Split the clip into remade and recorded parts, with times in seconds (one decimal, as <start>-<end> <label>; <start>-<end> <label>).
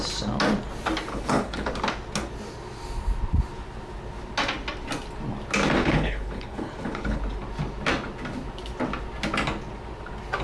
0.0-1.1 recorded; 1.1-1.7 remade; 1.7-5.8 recorded; 5.8-7.2 remade; 7.2-10.4 recorded